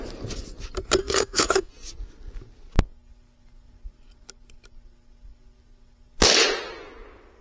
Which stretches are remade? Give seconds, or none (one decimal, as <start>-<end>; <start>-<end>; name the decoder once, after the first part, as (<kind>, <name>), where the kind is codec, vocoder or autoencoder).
1.0-1.7 (codec, SNAC)